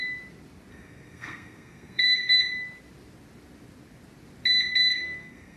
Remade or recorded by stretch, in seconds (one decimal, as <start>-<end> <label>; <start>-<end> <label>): 0.0-0.7 recorded; 0.7-2.4 remade; 2.4-4.9 recorded; 4.9-5.6 remade